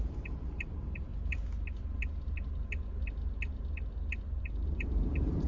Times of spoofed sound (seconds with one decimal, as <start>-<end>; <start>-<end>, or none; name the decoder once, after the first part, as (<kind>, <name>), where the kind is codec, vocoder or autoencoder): 0.0-1.1 (vocoder, BigVGAN v2); 4.4-5.5